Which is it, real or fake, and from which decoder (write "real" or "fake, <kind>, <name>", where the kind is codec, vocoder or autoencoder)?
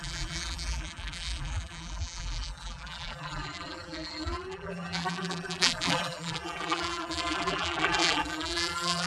fake, vocoder, BigVGAN v2